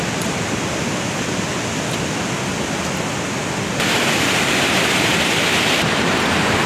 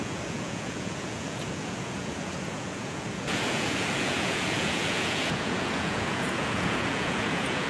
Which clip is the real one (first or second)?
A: first